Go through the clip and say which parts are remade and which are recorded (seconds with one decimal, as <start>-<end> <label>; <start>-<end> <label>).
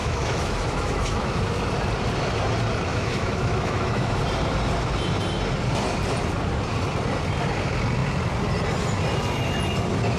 0.0-1.4 remade; 1.4-2.9 recorded; 2.9-4.2 remade; 4.2-10.2 recorded